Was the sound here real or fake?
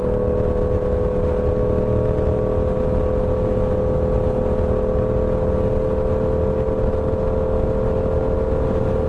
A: real